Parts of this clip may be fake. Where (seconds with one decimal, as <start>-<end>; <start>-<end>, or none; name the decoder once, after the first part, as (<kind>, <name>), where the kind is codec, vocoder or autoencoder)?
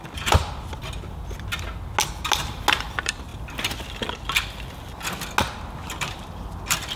0.0-0.8 (vocoder, BigVGAN v2); 2.7-3.3; 6.2-7.0